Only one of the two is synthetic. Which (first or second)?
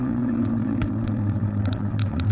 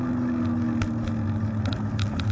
first